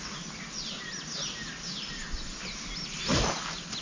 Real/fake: real